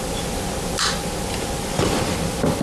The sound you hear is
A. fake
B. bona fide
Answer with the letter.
B